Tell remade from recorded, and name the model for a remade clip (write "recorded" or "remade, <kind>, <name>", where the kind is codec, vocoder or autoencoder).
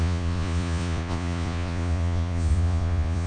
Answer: remade, vocoder, Vocos